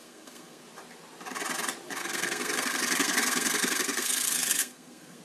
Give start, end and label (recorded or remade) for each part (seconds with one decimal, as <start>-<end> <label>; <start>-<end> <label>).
0.0-0.6 remade; 0.6-2.0 recorded; 2.0-5.2 remade